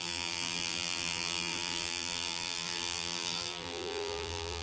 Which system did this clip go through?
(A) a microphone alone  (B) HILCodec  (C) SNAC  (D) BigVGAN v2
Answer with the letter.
D